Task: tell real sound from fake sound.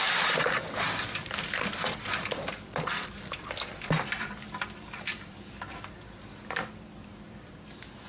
fake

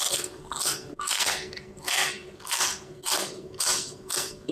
fake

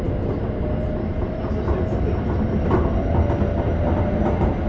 real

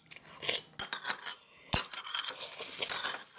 real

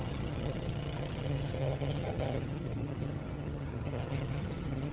fake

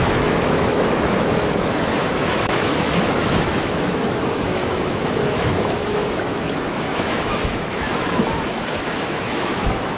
fake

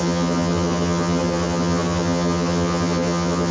fake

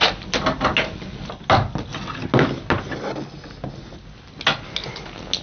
real